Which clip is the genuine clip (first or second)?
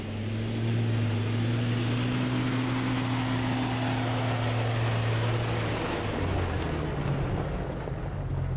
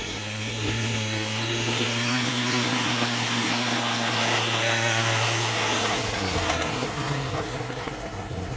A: first